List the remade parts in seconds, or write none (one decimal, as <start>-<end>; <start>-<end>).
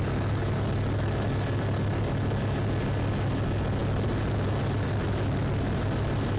none